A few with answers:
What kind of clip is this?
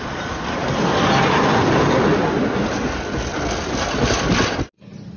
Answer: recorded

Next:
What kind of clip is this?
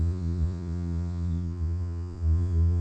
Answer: remade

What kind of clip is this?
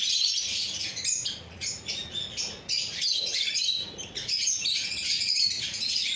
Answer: remade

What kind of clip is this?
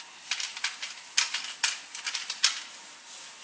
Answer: recorded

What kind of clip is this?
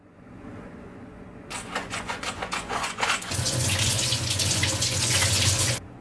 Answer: remade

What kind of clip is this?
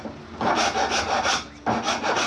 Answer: recorded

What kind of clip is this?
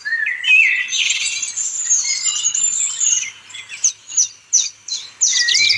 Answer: recorded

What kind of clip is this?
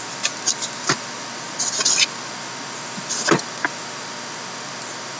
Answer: recorded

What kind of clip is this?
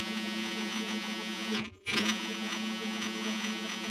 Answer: remade